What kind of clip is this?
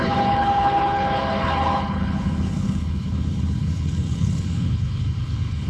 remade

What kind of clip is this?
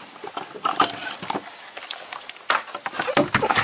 recorded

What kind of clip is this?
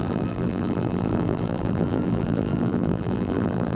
remade